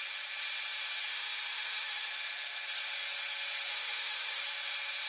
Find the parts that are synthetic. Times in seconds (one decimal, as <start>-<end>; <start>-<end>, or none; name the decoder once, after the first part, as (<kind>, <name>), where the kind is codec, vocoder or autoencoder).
1.1-2.1 (autoencoder, DAC-VAE); 3.7-4.4